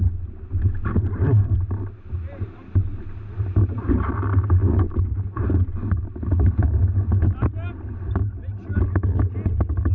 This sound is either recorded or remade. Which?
recorded